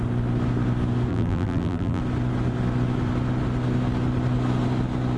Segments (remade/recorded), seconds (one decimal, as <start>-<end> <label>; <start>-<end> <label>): 0.0-1.1 recorded; 1.1-2.0 remade; 2.0-5.2 recorded